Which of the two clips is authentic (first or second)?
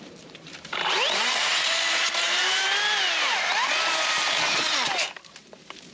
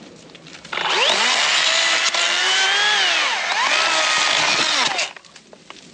second